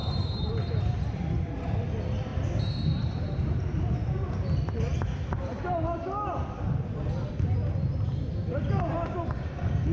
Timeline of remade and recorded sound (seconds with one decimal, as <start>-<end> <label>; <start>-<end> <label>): 0.0-9.9 recorded